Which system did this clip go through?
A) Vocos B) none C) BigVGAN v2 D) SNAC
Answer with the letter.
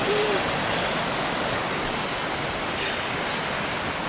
B